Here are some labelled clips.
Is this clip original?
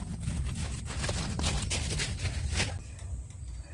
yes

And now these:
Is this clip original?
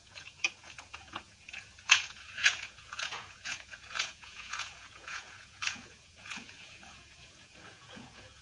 no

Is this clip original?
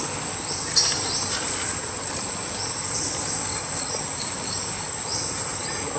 yes